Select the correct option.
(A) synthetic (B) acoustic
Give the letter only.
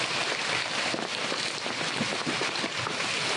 B